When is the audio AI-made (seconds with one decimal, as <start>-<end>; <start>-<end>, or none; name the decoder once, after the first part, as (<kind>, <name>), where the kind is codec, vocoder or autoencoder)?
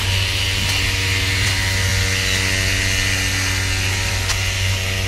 none